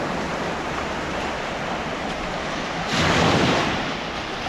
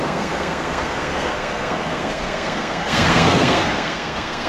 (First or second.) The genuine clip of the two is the first